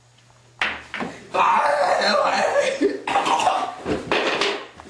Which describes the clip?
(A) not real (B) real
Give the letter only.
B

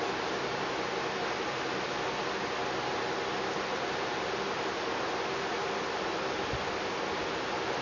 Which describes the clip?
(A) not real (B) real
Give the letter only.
B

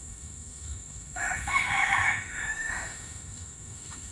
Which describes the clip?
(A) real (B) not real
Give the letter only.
B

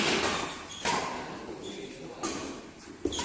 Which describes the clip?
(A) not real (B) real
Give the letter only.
B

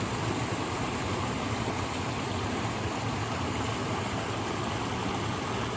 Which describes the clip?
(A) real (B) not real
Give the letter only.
A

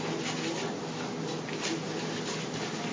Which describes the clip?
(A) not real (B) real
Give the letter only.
B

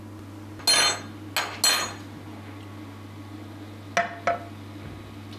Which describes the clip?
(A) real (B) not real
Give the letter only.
A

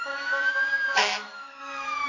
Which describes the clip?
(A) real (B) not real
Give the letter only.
B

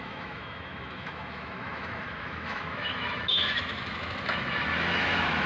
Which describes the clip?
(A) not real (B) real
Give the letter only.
A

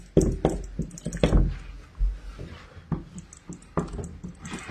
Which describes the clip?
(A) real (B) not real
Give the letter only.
A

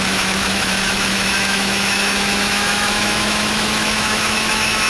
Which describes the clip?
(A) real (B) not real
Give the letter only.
B